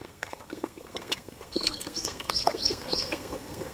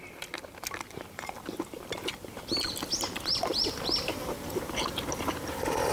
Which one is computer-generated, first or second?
first